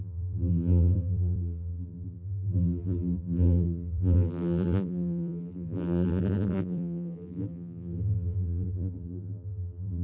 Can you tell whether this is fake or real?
fake